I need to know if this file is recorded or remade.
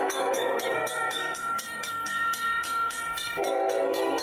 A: remade